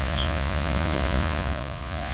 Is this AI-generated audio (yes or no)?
yes